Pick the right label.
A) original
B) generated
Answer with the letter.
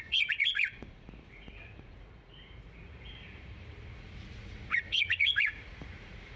B